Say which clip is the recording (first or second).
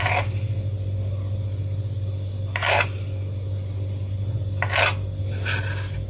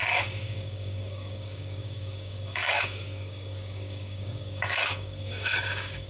first